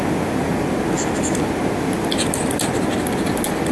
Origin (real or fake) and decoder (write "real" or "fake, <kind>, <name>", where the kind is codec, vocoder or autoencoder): real